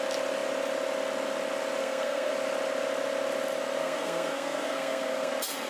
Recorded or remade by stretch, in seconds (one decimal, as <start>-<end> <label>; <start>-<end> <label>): 0.0-1.8 recorded; 1.8-2.3 remade; 2.3-3.8 recorded; 3.8-5.3 remade; 5.3-5.7 recorded